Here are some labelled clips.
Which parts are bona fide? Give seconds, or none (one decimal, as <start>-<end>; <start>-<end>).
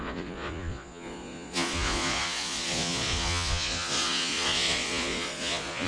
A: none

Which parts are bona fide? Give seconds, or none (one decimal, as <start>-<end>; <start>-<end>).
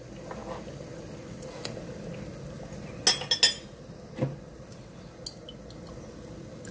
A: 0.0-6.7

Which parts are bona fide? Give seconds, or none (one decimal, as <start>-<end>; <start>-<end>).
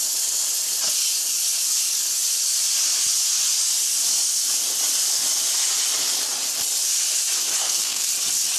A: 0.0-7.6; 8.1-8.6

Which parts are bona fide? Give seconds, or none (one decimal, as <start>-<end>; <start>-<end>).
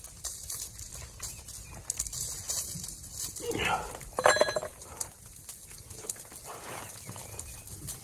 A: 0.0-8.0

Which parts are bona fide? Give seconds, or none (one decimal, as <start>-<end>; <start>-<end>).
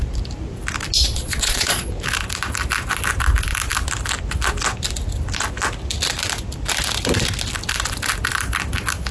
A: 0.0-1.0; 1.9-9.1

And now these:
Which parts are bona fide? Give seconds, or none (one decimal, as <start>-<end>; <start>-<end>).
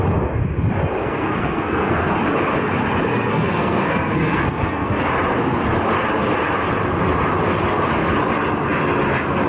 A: 0.0-1.0; 2.1-3.1; 5.1-9.5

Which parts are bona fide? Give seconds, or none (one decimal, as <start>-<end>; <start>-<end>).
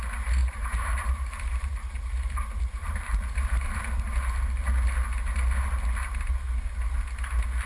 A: 0.0-0.4; 3.8-7.7